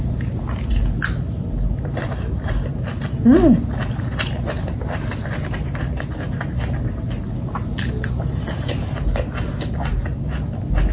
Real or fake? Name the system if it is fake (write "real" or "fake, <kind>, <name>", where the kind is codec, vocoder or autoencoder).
real